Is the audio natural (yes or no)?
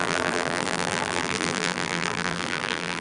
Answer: no